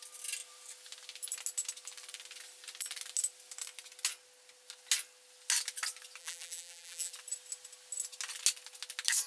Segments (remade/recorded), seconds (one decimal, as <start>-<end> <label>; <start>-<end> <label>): 0.0-6.2 recorded; 6.2-7.1 remade; 7.1-9.3 recorded